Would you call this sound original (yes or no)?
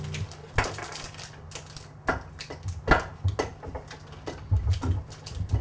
yes